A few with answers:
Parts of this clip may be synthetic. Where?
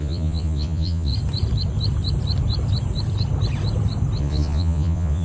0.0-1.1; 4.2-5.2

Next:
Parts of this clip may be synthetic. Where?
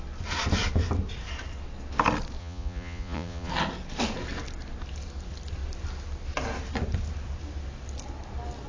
2.4-3.5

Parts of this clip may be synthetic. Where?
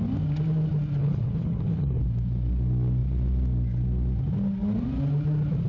1.0-2.0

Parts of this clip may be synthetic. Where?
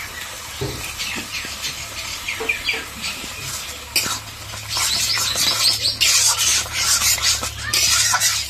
6.5-7.2